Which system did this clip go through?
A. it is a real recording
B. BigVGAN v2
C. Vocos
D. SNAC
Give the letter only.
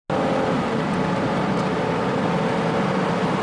A